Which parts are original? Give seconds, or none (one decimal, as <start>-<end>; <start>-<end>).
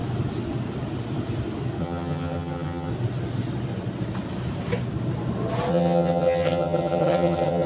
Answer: 0.0-1.8; 2.9-5.7